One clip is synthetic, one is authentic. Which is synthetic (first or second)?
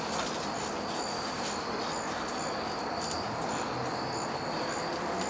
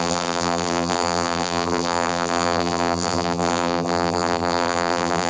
second